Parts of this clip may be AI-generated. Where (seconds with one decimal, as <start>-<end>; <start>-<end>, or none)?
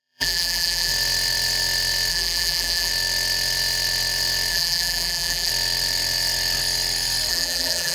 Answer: 0.0-0.9; 2.1-2.9; 4.5-5.5; 7.3-7.9